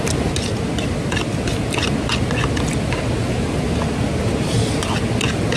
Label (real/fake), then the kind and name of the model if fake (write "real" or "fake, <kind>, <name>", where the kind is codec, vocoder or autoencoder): real